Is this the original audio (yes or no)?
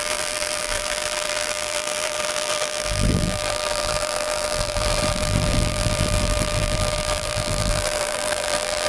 no